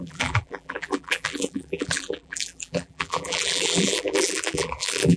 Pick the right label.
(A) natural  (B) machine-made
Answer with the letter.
B